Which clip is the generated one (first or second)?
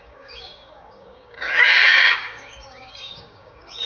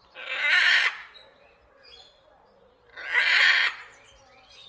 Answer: first